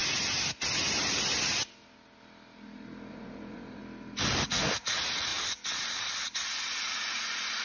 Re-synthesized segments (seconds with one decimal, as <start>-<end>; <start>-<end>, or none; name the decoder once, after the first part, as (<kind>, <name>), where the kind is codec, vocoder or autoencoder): 3.1-3.8 (vocoder, Vocos); 4.5-5.3; 6.8-7.6